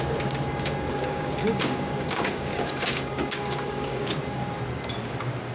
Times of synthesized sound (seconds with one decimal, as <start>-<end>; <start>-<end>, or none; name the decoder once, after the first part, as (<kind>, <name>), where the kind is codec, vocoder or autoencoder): 0.9-4.2 (codec, DAC)